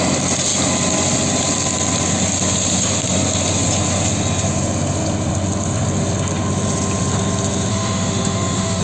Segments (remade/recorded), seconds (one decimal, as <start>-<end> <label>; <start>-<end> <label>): 0.0-7.7 recorded; 7.7-8.8 remade